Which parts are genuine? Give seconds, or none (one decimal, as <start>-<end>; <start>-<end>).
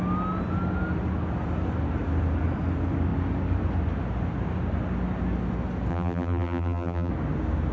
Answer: 0.0-5.9; 7.1-7.7